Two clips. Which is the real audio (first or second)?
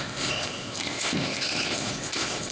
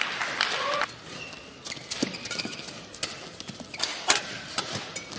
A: second